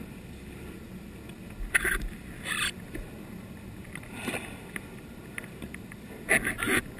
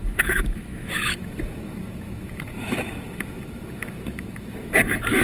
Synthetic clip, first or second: second